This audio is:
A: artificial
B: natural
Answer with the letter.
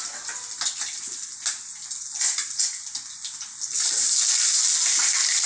B